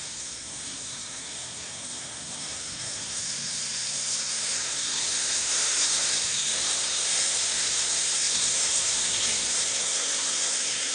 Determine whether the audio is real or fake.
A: fake